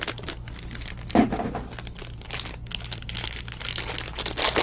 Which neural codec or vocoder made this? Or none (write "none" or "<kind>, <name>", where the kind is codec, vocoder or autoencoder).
none